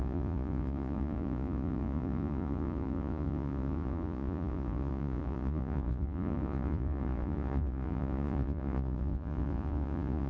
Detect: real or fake fake